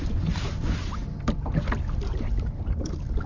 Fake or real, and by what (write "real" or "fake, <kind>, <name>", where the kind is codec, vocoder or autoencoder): real